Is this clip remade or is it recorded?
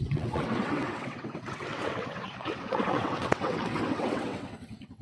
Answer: remade